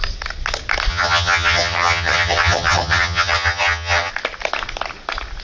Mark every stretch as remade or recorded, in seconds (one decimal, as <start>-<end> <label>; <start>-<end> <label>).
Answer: 0.0-0.9 recorded; 0.9-4.1 remade; 4.1-5.4 recorded

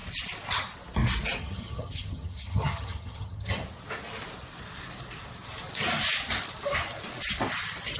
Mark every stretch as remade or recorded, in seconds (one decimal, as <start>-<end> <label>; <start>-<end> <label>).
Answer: 0.0-1.4 recorded; 1.4-3.6 remade; 3.6-8.0 recorded

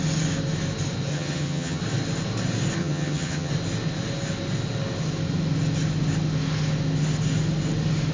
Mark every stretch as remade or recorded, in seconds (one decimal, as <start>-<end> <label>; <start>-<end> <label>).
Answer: 0.0-1.1 recorded; 1.1-1.8 remade; 1.8-2.8 recorded; 2.8-3.5 remade; 3.5-8.1 recorded

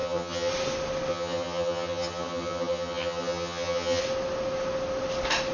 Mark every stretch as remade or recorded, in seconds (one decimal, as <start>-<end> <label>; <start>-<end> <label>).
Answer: 0.0-0.5 remade; 0.5-1.1 recorded; 1.1-4.0 remade; 4.0-5.5 recorded

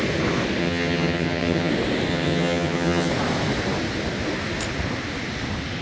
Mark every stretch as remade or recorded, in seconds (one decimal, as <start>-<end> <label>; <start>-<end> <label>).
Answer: 0.0-0.6 recorded; 0.6-1.7 remade; 1.7-2.1 recorded; 2.1-3.1 remade; 3.1-5.8 recorded

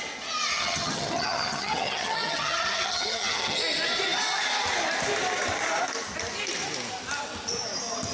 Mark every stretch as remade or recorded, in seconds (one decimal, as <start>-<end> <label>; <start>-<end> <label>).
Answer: 0.0-0.5 recorded; 0.5-3.6 remade; 3.6-8.1 recorded

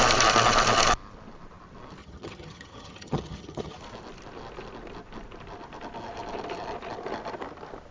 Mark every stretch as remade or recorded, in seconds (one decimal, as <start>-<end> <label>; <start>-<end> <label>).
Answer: 0.0-2.0 recorded; 2.0-3.8 remade; 3.8-7.9 recorded